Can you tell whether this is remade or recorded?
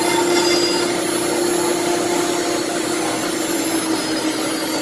recorded